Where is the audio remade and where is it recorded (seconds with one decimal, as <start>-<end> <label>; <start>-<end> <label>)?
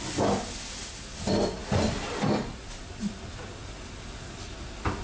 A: 0.0-1.6 recorded; 1.6-2.6 remade; 2.6-5.0 recorded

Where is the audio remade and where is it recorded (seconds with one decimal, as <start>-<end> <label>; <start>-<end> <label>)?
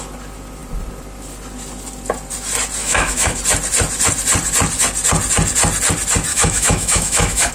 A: 0.0-2.8 recorded; 2.8-3.4 remade; 3.4-6.3 recorded; 6.3-7.5 remade